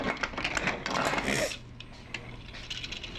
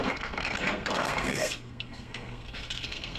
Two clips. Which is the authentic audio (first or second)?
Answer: first